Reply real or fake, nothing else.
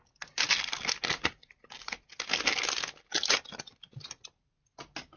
real